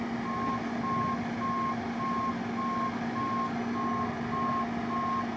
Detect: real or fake real